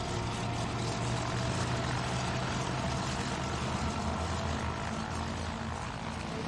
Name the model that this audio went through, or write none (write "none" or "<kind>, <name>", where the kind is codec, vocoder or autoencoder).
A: none